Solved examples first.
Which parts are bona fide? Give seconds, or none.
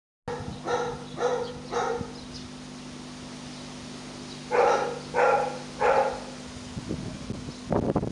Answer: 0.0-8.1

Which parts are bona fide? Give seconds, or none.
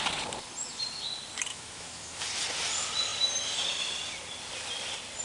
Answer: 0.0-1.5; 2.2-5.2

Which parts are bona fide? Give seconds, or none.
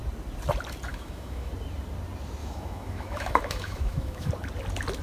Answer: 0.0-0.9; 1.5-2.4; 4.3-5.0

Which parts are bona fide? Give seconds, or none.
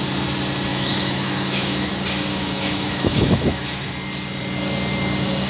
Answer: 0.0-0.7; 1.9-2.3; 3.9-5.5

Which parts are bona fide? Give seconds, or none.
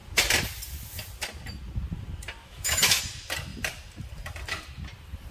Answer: 0.0-2.4; 3.0-5.3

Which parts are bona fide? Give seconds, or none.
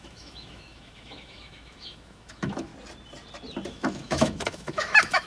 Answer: 2.7-3.7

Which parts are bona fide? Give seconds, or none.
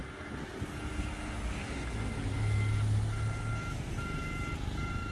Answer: 0.0-5.1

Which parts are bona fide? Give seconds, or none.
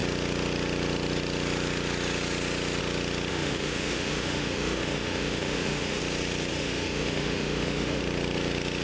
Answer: 0.0-3.3; 6.0-6.5; 8.0-8.8